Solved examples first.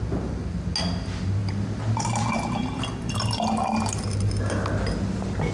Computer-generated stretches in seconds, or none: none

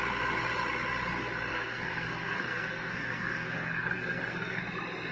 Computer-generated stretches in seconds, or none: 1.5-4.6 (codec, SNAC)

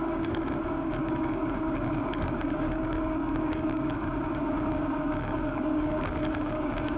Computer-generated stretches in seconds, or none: 0.0-7.0 (codec, DAC)

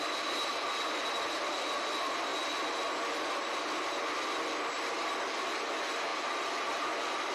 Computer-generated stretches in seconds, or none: none

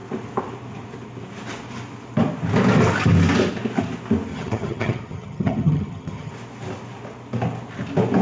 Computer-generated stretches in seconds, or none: 4.3-6.3 (vocoder, HiFi-GAN)

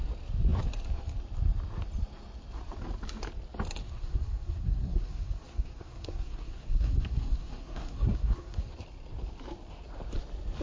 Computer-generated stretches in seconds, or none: 3.8-8.7 (codec, SNAC)

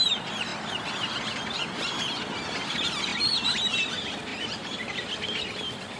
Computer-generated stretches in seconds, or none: 4.3-6.0 (vocoder, BigVGAN v2)

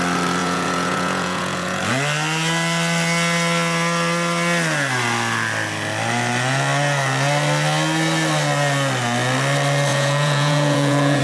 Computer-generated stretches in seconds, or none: 0.4-1.8 (vocoder, Vocos); 9.9-11.2